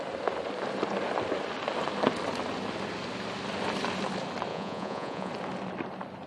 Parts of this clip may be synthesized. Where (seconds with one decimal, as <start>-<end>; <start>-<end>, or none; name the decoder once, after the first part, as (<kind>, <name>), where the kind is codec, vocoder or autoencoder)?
4.5-5.3 (vocoder, Vocos)